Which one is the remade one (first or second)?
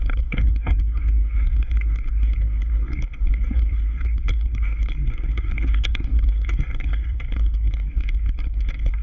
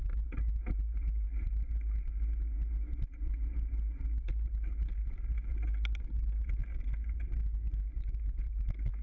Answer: first